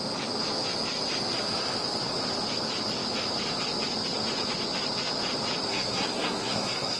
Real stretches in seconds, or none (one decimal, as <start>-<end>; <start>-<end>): 0.0-5.7

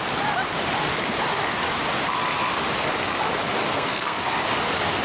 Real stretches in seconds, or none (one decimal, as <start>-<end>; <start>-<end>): 0.0-3.7; 4.2-5.0

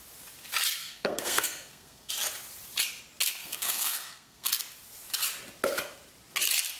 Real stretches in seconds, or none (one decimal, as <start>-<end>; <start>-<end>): 0.0-0.8; 2.1-3.3; 4.5-6.8